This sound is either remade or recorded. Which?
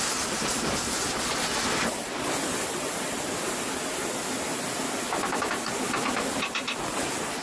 recorded